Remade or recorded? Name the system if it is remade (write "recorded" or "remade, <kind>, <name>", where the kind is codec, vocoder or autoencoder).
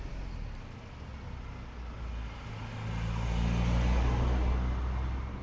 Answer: recorded